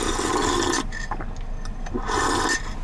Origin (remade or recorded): recorded